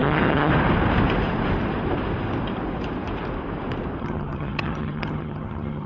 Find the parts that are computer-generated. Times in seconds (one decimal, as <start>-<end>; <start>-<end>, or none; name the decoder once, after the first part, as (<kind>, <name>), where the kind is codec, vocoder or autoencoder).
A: 0.0-0.5 (vocoder, HiFi-GAN); 4.0-5.9